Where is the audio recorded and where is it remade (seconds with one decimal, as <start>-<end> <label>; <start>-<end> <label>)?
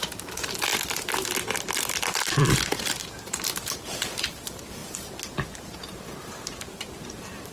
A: 0.0-0.7 remade; 0.7-2.4 recorded; 2.4-4.8 remade; 4.8-5.6 recorded; 5.6-7.5 remade